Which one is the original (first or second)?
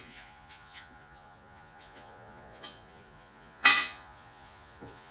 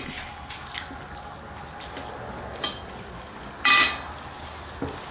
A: second